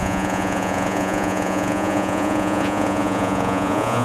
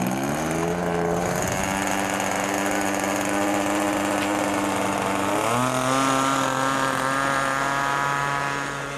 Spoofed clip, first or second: first